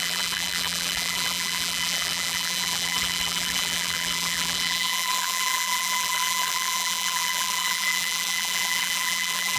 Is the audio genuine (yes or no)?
no